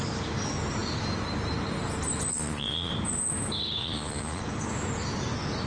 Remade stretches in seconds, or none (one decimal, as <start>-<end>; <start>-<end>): 2.3-2.9; 3.8-4.4